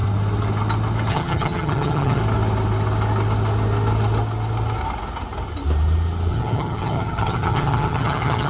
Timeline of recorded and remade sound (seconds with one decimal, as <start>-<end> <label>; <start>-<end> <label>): 0.0-1.1 recorded; 1.1-2.2 remade; 2.2-6.3 recorded; 6.3-8.5 remade

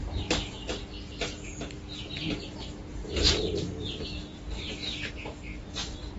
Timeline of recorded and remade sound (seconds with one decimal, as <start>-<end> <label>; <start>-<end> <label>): 0.0-6.2 recorded

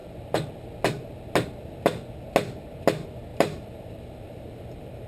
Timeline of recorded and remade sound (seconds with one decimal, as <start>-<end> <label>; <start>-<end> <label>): 0.0-3.3 recorded; 3.3-5.1 remade

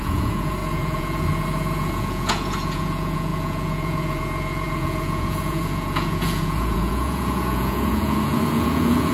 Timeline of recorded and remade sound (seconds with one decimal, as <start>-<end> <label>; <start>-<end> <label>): 0.0-9.1 remade

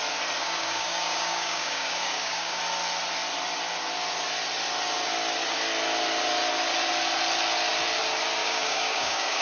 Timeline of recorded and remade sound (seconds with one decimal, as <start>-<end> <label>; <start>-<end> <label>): 0.0-0.4 recorded; 0.4-2.6 remade; 2.6-8.4 recorded; 8.4-9.4 remade